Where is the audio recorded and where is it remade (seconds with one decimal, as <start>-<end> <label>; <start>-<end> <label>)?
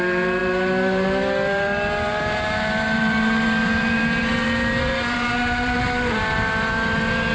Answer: 0.0-7.3 remade